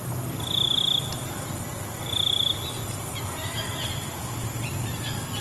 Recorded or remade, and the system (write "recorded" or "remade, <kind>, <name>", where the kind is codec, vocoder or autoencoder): recorded